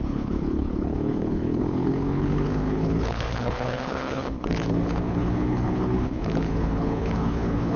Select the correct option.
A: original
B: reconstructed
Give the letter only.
B